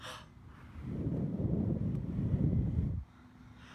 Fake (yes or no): no